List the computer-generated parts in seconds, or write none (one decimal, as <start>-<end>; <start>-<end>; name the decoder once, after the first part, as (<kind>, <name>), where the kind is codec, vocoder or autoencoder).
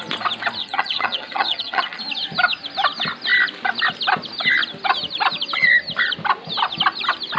0.6-2.0 (vocoder, HiFi-GAN)